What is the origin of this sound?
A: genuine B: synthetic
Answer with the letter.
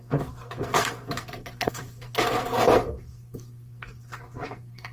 B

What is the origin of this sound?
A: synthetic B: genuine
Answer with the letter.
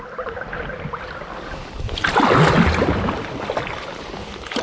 B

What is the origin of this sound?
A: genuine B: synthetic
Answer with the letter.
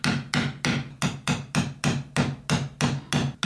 A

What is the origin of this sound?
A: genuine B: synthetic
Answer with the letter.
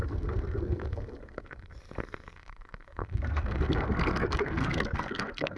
B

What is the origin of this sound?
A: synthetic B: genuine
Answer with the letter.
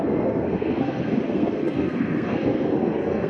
A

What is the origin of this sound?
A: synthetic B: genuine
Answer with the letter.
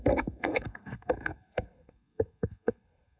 A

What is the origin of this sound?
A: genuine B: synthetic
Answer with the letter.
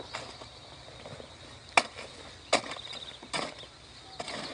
A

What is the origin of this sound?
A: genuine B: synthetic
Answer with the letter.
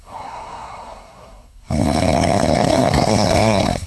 B